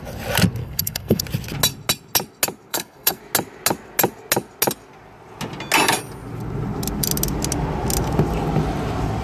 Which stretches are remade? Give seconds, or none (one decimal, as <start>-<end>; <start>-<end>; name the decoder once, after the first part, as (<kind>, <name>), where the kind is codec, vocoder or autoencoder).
0.6-1.2 (codec, SNAC); 2.7-3.2